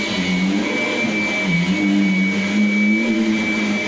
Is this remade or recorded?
recorded